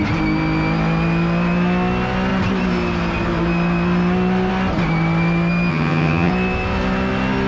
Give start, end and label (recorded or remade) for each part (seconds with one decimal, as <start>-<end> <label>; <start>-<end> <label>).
0.0-5.7 recorded; 5.7-6.3 remade; 6.3-7.5 recorded